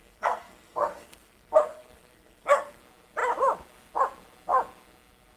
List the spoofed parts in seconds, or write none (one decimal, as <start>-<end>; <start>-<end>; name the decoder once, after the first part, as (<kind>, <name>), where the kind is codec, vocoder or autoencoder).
0.0-2.8 (codec, SNAC)